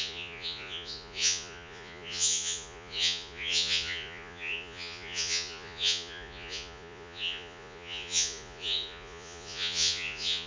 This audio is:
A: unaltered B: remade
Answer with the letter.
B